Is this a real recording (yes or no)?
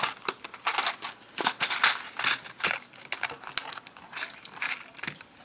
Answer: yes